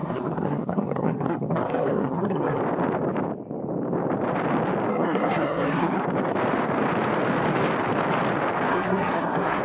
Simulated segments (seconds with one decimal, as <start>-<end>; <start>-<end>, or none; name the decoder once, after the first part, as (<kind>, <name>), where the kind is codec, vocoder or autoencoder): 0.0-2.6 (codec, SNAC); 4.9-6.0; 8.7-9.6